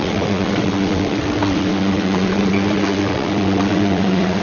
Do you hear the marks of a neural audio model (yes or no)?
yes